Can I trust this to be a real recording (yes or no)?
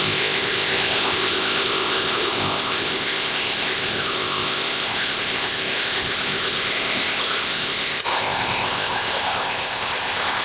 no